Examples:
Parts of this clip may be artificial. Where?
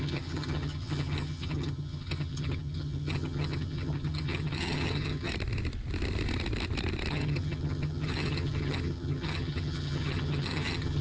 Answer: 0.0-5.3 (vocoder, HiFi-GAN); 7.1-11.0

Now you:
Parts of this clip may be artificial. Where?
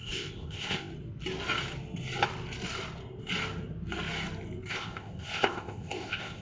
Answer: 0.0-0.9 (codec, ZipCodec); 4.7-6.4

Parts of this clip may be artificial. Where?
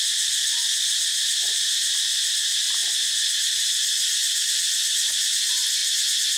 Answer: none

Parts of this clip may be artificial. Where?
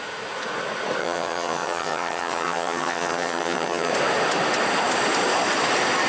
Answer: 1.0-3.9 (vocoder, HiFi-GAN)